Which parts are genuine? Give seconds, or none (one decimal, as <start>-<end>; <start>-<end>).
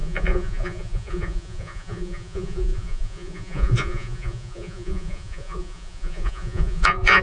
none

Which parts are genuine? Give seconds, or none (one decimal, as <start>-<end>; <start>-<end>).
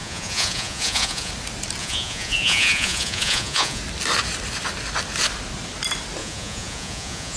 1.3-1.8; 3.8-6.2